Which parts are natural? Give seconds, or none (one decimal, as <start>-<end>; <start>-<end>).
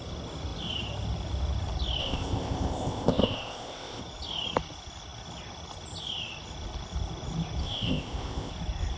0.0-2.0; 4.0-7.6; 8.5-9.0